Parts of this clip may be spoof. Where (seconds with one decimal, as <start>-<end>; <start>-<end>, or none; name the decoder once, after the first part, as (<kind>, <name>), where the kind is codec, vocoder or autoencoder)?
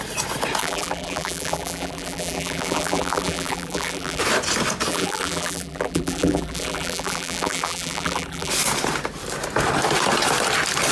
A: 0.6-4.2 (vocoder, BigVGAN v2); 4.9-8.5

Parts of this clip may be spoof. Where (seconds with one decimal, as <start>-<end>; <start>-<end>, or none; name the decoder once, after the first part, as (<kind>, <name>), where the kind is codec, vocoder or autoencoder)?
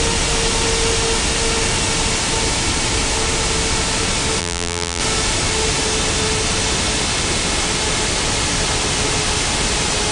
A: 4.4-5.0 (vocoder, BigVGAN v2)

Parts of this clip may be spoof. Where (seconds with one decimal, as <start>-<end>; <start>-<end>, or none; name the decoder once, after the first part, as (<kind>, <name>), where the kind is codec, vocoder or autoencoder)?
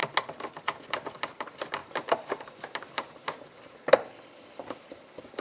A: none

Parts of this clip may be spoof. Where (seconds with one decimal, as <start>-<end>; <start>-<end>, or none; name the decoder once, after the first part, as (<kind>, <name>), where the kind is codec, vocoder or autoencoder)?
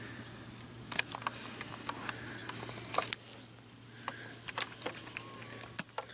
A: none